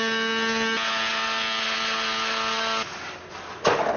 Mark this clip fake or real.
real